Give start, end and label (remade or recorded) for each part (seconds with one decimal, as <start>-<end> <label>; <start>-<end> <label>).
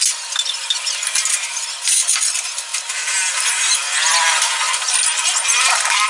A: 0.0-6.1 recorded